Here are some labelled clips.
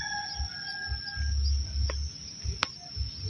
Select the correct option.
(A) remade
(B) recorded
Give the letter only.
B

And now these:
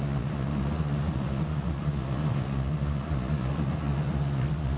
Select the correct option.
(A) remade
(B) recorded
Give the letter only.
A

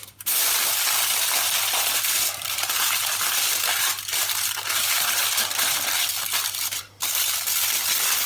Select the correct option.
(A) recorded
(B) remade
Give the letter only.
A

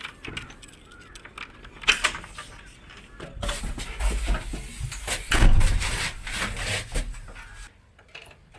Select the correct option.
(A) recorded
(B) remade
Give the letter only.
A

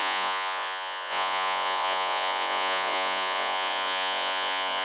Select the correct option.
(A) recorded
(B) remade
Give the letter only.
B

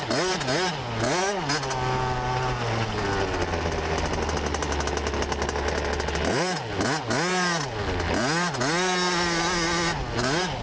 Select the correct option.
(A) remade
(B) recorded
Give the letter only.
B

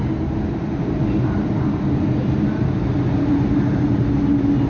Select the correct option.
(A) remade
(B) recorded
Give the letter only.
B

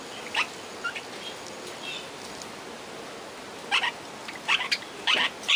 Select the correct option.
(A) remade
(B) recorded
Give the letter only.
B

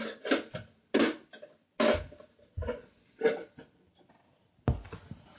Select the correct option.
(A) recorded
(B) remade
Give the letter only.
A